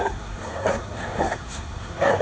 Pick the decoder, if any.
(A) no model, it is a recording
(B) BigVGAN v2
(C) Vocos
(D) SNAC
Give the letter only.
D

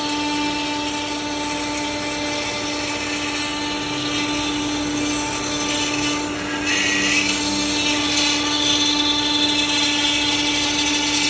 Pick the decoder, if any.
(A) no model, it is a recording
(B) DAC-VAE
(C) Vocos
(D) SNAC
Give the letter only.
A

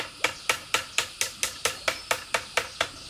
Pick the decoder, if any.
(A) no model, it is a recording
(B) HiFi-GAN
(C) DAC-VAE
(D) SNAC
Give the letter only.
A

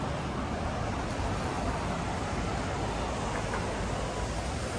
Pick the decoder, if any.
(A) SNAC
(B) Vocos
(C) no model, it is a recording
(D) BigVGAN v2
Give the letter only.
C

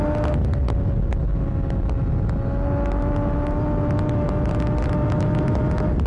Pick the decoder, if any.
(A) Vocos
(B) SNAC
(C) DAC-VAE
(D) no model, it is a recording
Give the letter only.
D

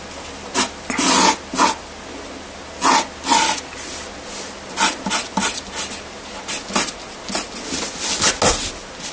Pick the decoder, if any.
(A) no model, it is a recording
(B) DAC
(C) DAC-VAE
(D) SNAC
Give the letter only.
A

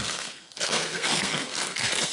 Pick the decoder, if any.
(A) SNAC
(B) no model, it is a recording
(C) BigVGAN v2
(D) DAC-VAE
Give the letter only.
A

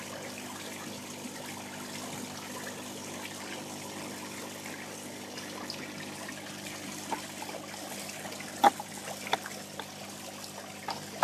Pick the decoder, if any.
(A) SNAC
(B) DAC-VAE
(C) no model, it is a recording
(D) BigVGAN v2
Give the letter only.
C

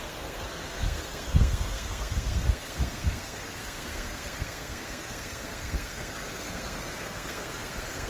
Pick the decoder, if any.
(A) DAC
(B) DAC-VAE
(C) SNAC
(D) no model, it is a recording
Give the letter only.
C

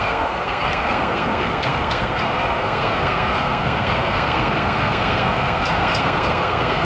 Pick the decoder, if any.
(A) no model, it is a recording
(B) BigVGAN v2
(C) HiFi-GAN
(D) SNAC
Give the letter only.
D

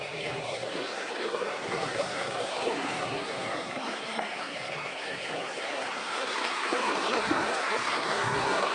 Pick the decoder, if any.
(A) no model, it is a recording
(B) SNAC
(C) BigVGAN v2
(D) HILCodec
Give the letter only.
B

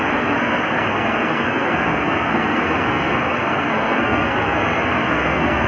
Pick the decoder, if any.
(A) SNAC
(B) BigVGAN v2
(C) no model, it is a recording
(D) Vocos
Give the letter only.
A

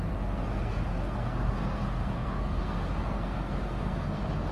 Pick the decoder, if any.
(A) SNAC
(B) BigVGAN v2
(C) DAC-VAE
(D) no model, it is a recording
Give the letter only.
A